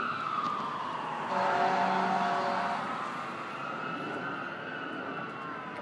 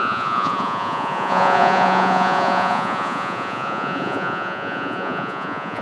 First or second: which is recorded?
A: first